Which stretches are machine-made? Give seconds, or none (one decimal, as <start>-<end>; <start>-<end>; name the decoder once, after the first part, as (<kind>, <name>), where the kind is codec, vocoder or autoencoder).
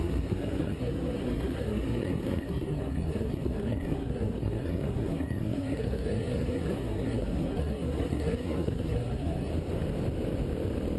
0.0-9.5 (codec, SNAC)